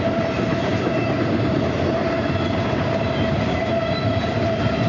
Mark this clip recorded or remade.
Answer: remade